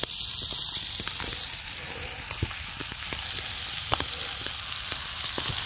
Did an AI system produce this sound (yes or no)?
no